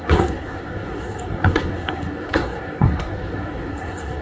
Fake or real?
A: fake